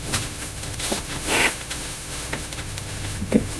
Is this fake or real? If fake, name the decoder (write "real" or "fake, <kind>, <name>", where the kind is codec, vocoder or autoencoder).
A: fake, autoencoder, DAC-VAE